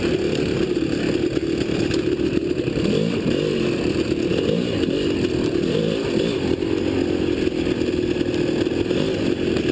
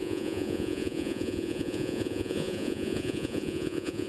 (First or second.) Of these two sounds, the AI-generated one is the second